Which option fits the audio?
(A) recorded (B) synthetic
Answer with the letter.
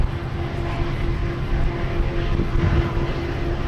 A